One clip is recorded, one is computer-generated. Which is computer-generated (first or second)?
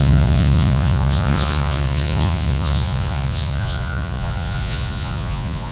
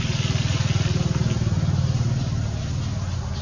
first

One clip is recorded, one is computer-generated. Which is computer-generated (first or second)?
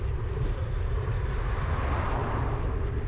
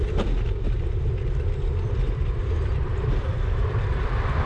second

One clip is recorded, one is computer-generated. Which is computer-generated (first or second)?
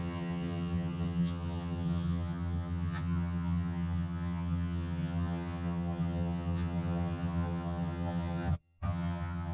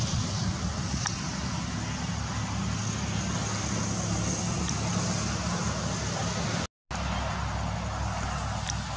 first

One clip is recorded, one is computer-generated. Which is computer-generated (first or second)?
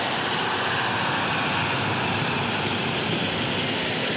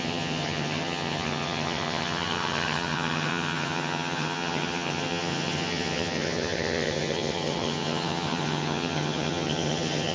second